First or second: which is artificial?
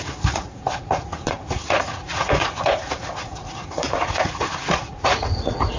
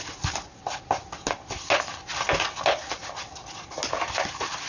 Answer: first